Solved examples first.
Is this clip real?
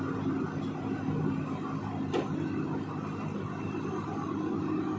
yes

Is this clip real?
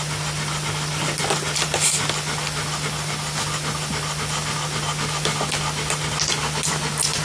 yes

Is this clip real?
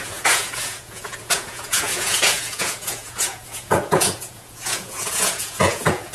no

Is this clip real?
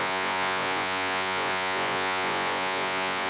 no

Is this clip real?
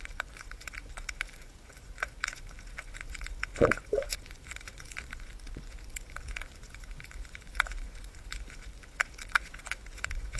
no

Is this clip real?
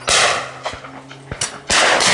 yes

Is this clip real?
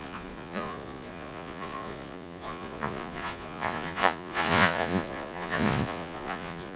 no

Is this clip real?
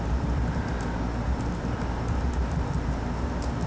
yes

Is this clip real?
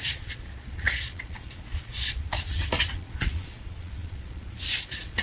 no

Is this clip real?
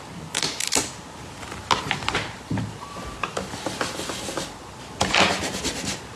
yes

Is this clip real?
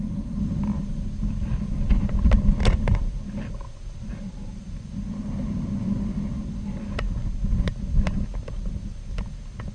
yes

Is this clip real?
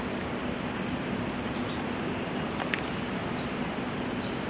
yes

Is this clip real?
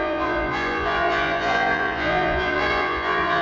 no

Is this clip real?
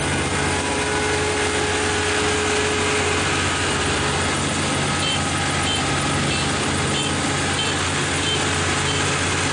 yes